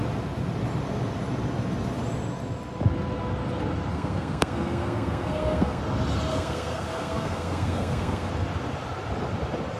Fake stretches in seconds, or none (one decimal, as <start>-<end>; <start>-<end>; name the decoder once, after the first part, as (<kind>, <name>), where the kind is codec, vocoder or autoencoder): 3.9-5.8 (codec, SNAC); 6.3-8.3